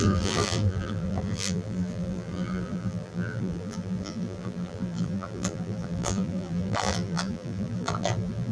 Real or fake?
fake